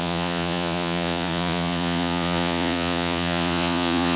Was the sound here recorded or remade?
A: remade